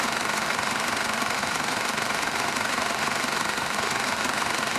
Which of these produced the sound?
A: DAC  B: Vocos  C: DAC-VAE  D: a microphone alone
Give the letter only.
C